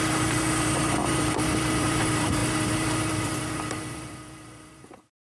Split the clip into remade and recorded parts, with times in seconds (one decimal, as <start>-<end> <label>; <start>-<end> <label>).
0.0-5.3 remade